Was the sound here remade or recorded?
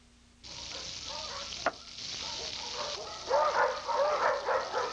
recorded